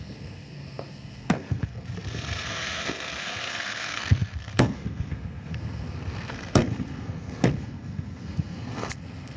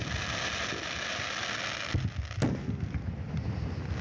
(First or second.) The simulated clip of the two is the first